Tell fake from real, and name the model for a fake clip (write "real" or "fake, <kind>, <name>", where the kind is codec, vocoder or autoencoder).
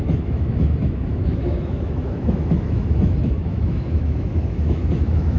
fake, autoencoder, DAC-VAE